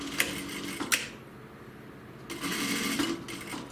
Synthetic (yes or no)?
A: no